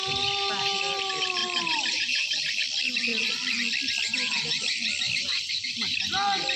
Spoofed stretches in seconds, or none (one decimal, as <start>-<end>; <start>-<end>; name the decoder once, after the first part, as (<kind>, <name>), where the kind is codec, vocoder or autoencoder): none